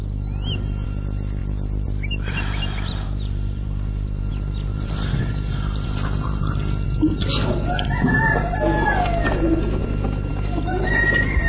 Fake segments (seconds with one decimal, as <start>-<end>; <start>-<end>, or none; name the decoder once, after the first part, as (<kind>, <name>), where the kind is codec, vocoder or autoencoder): 1.4-4.3 (vocoder, BigVGAN v2); 4.7-6.4